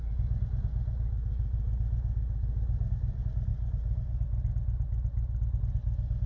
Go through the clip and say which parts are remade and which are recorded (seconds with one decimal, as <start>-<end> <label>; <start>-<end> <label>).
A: 0.0-6.3 recorded